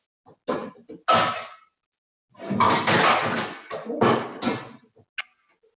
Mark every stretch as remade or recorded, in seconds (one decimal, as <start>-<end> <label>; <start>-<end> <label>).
0.0-5.8 recorded